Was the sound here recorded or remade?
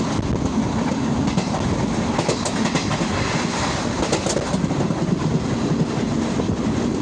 recorded